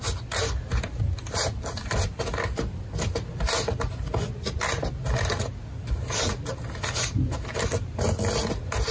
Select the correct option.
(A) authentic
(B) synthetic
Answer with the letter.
A